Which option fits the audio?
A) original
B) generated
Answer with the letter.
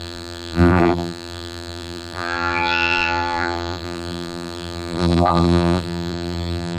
B